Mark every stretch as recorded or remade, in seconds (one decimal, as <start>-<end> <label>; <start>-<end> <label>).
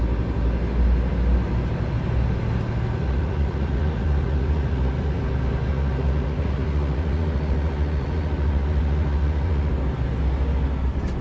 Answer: 0.0-3.0 recorded; 3.0-5.2 remade; 5.2-5.7 recorded; 5.7-9.7 remade; 9.7-11.2 recorded